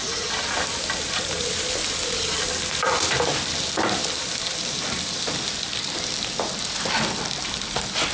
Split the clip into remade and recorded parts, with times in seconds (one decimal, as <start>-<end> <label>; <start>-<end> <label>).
0.0-4.6 remade; 4.6-8.1 recorded